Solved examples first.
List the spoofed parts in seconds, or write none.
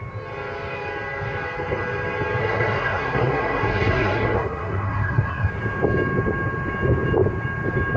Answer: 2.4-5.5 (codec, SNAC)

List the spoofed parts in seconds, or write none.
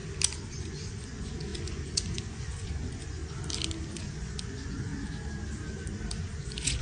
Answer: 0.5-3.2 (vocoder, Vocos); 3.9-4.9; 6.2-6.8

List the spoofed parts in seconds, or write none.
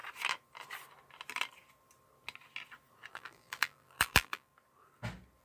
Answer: 3.1-4.5 (vocoder, BigVGAN v2)